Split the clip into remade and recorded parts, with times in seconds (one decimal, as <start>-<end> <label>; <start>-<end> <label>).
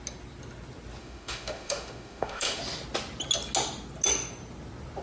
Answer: 0.0-1.0 recorded; 1.0-2.6 remade; 2.6-5.0 recorded